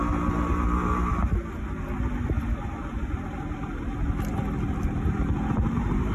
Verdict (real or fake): real